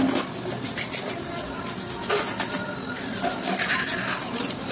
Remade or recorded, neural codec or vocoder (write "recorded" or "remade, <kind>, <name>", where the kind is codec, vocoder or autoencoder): recorded